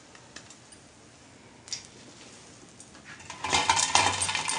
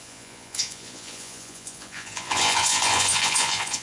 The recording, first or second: first